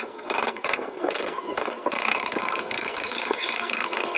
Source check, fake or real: fake